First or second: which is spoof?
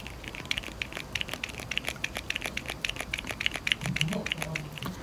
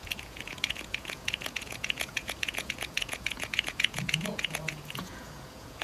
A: second